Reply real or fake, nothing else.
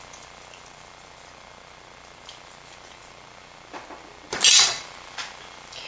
real